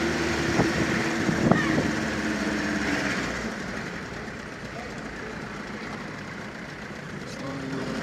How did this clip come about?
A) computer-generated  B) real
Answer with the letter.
A